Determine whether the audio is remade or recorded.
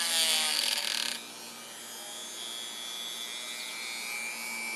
recorded